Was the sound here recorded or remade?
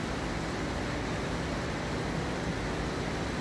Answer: recorded